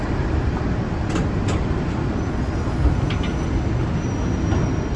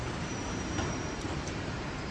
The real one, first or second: first